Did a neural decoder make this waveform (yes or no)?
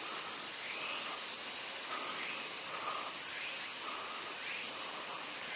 no